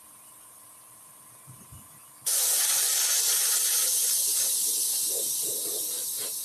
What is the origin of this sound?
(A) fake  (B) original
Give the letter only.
B